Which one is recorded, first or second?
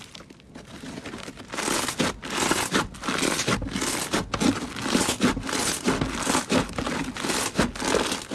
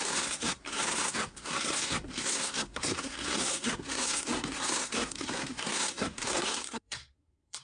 first